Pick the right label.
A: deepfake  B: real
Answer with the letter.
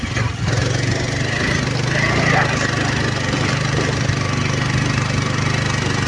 B